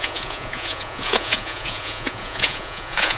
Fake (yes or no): yes